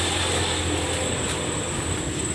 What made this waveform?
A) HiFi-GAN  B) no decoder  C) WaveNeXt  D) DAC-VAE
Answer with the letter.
B